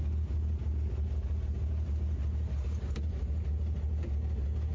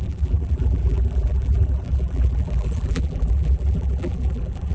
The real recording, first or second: first